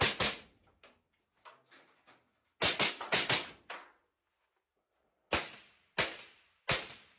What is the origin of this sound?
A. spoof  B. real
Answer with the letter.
B